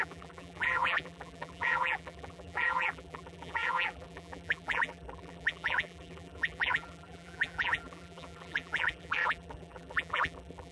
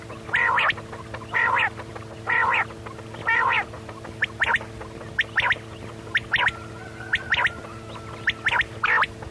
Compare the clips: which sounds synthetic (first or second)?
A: first